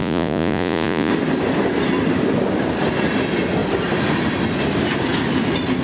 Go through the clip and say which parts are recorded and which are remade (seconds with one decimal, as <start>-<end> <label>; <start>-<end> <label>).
0.0-1.1 remade; 1.1-5.8 recorded